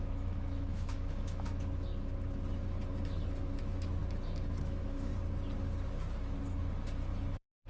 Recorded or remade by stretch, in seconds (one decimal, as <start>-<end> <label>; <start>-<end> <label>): 0.0-1.9 remade; 1.9-3.6 recorded; 3.6-4.0 remade; 4.0-4.6 recorded; 4.6-5.1 remade; 5.1-7.3 recorded; 7.3-7.7 remade